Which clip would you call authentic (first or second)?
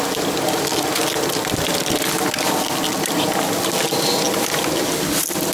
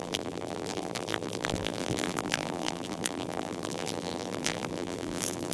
first